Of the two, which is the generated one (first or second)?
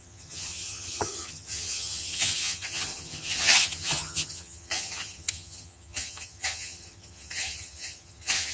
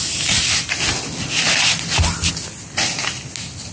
first